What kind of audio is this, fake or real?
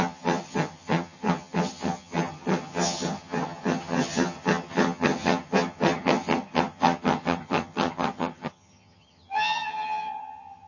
fake